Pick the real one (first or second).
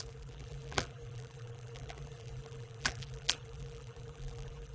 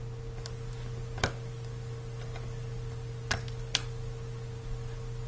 second